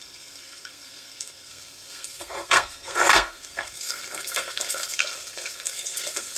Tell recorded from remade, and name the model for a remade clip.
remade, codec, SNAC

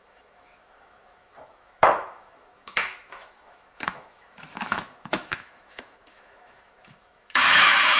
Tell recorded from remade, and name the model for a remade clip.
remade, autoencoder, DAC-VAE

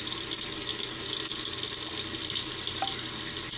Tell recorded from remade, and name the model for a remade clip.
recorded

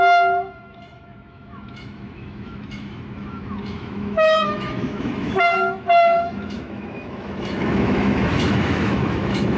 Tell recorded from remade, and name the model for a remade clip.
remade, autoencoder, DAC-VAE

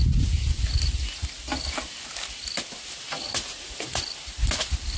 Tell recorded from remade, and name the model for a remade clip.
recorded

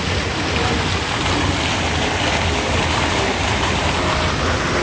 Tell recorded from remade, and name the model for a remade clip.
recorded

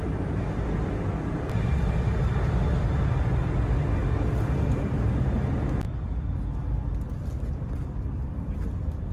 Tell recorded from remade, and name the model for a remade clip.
recorded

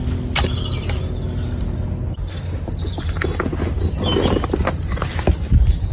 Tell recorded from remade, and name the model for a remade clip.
recorded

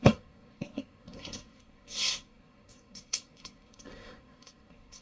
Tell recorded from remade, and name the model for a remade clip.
remade, codec, SNAC